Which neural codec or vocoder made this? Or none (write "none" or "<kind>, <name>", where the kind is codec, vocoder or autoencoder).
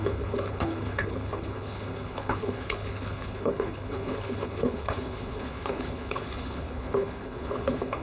codec, HILCodec